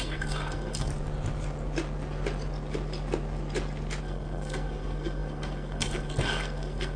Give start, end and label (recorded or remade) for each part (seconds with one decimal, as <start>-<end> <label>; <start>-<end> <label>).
0.0-0.9 remade; 0.9-4.0 recorded; 4.0-7.0 remade